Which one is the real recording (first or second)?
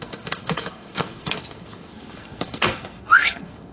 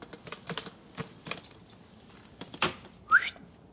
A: second